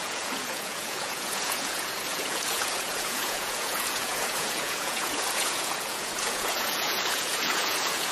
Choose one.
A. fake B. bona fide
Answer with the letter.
A